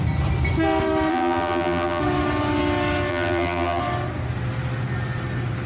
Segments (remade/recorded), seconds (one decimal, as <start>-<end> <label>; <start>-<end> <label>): 0.0-1.1 recorded; 1.1-2.0 remade; 2.0-3.1 recorded; 3.1-3.8 remade; 3.8-5.7 recorded